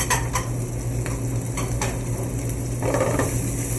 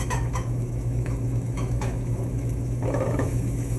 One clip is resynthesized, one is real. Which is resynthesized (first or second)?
second